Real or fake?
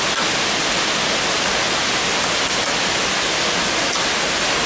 real